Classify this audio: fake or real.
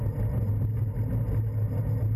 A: real